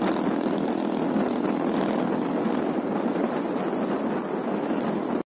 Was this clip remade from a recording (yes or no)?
no